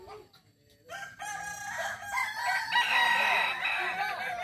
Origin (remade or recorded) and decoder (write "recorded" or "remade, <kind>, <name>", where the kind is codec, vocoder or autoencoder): recorded